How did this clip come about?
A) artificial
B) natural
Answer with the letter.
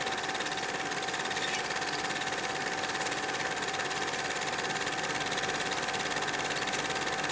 B